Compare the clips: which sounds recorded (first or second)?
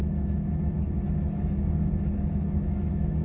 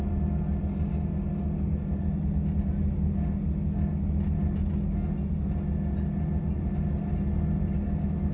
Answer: second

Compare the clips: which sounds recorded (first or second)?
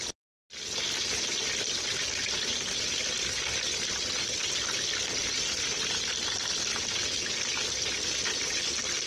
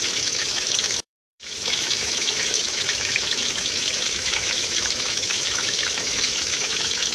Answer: first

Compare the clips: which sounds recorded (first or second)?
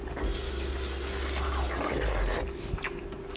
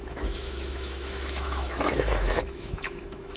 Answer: first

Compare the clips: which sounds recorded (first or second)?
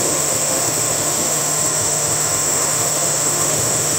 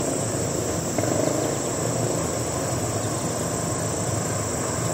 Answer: second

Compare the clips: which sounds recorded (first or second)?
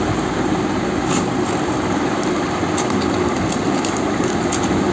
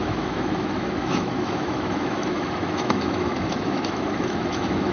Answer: first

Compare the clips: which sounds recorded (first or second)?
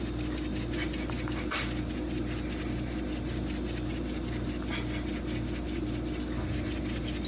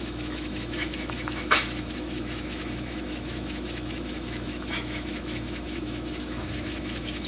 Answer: first